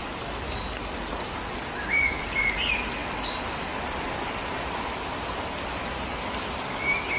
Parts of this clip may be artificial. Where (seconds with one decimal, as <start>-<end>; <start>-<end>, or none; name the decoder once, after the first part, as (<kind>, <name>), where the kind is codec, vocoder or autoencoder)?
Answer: none